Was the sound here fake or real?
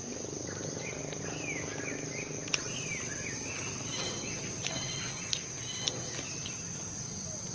real